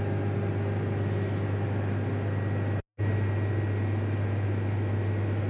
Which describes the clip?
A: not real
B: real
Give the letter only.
B